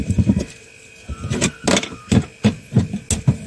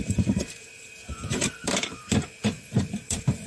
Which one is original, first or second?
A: first